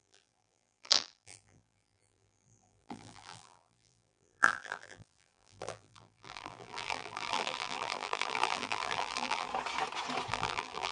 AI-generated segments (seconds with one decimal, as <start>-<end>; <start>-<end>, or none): 0.0-9.5; 10.3-10.9